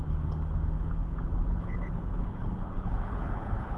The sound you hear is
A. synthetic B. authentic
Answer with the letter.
A